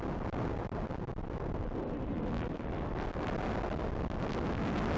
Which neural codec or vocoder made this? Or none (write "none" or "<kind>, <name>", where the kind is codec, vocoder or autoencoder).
none